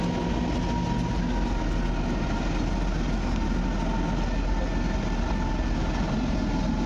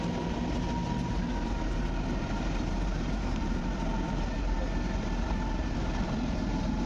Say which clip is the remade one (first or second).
second